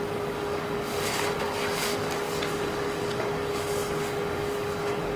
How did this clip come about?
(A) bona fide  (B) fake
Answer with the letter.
B